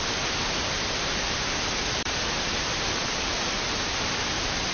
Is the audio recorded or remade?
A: remade